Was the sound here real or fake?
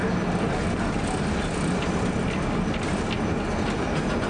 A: real